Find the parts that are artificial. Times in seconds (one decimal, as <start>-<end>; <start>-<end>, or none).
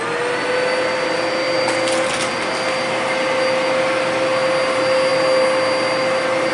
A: none